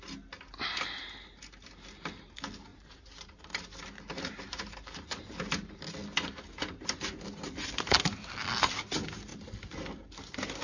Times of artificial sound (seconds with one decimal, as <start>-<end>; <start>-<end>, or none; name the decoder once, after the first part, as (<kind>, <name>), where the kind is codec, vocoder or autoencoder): 2.7-3.4 (vocoder, BigVGAN v2); 4.1-5.2